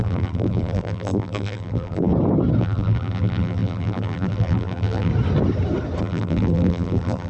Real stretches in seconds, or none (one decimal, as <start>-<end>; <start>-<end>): 2.1-2.6; 5.1-6.0